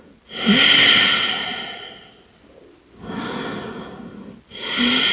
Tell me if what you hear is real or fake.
real